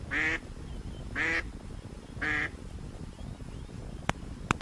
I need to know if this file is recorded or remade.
recorded